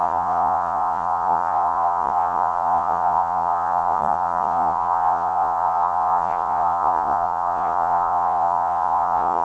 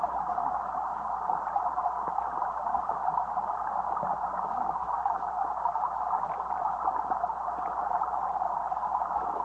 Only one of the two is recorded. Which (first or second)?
second